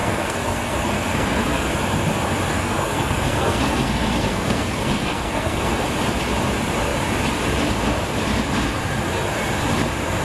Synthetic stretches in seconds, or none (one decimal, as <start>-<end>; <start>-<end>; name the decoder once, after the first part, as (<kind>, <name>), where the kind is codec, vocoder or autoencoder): 0.0-1.8 (codec, SNAC); 2.5-5.9